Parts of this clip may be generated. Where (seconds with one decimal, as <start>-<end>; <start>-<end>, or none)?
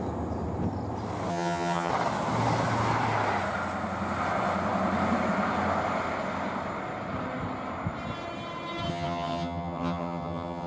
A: 1.3-1.9; 8.9-10.7